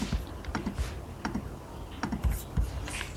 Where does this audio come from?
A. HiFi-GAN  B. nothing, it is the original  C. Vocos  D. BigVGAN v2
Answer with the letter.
B